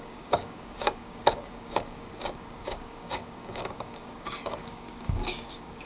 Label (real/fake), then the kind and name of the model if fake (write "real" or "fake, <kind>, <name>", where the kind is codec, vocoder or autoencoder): fake, codec, DAC